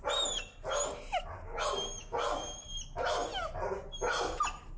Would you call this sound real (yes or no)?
yes